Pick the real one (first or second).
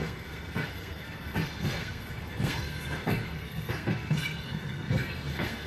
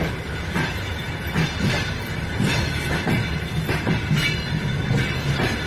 second